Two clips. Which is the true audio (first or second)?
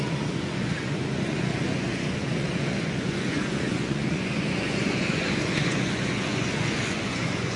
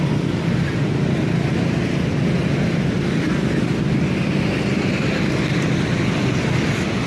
second